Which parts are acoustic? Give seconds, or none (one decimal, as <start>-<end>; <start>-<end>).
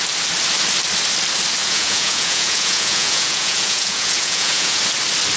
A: 0.0-1.6; 4.8-5.4